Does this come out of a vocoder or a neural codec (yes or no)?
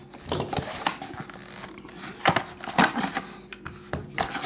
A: no